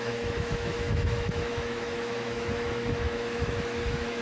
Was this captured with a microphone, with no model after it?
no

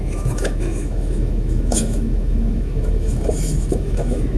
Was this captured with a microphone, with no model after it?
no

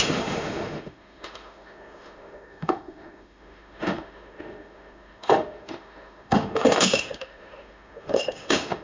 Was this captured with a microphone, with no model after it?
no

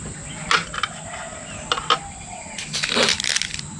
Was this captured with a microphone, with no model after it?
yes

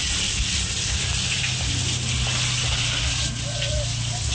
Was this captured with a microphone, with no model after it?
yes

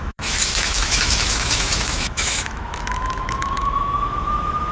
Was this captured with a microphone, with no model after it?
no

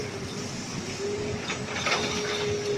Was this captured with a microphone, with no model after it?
yes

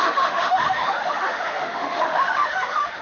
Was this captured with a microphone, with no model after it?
no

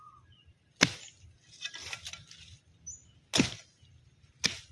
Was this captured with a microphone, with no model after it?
yes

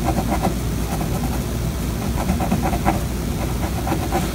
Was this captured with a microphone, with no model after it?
yes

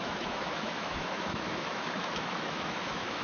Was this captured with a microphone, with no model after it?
no